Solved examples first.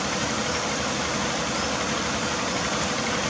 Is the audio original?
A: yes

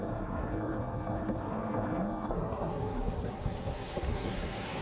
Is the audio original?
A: no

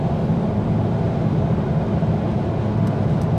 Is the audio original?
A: yes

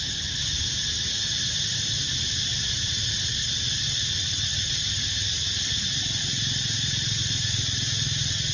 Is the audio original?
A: yes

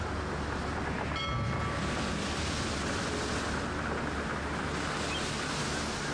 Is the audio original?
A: yes